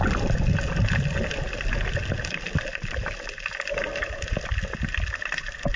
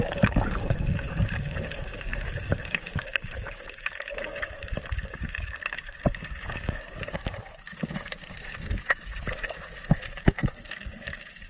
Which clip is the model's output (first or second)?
second